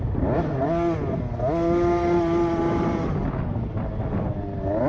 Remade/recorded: recorded